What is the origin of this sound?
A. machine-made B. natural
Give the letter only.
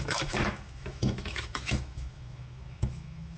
A